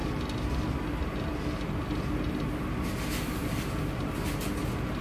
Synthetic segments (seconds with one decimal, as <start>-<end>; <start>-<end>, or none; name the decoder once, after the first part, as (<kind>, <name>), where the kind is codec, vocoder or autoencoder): none